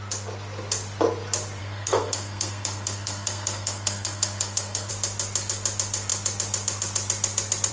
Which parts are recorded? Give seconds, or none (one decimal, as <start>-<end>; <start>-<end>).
0.0-1.6; 4.9-7.7